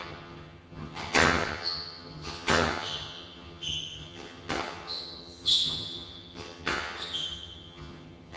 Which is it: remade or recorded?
remade